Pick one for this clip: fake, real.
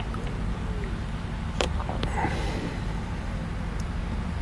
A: real